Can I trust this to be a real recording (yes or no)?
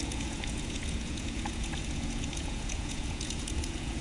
no